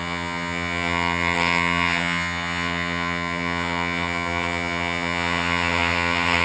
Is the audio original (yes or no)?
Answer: no